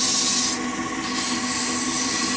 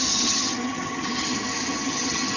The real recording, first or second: first